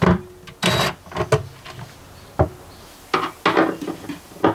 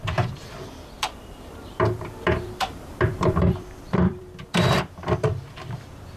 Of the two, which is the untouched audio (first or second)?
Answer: first